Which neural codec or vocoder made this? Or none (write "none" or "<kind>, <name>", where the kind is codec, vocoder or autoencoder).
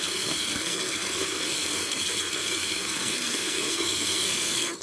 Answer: codec, SNAC